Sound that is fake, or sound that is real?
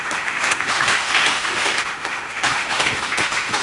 fake